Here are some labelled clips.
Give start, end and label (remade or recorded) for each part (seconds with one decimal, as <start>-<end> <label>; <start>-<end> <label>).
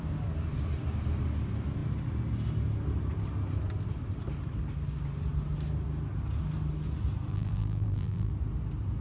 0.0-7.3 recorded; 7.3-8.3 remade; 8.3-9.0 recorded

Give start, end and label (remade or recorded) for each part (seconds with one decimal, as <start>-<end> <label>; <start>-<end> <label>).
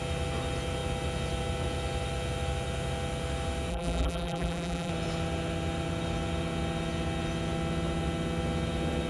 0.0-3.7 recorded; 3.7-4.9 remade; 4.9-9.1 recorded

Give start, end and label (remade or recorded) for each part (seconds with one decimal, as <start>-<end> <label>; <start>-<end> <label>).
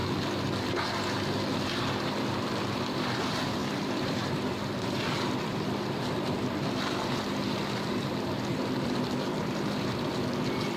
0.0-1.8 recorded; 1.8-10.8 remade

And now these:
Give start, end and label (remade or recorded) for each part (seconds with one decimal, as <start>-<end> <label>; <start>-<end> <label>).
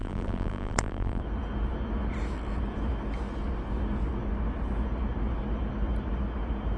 0.0-1.2 remade; 1.2-6.8 recorded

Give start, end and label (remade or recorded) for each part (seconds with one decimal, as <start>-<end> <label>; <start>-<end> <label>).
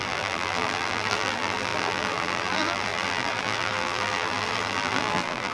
0.0-5.5 remade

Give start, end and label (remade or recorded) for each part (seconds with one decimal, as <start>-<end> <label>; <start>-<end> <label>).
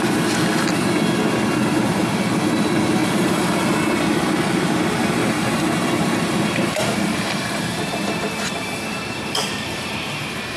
0.0-3.0 recorded; 3.0-3.6 remade; 3.6-5.2 recorded; 5.2-9.9 remade; 9.9-10.6 recorded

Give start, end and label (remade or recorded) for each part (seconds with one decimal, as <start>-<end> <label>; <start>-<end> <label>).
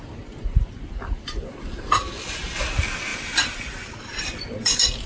0.0-3.1 recorded; 3.1-4.4 remade; 4.4-5.1 recorded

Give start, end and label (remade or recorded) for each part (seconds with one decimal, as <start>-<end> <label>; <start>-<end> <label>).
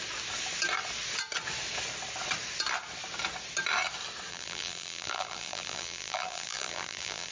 0.0-4.3 recorded; 4.3-7.3 remade